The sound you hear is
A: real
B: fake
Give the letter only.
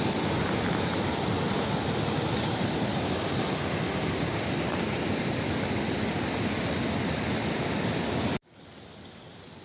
A